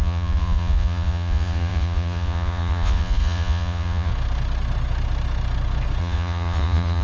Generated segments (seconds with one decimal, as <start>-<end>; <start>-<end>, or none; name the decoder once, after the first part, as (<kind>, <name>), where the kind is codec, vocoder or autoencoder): 0.0-4.1 (vocoder, Vocos); 6.0-7.0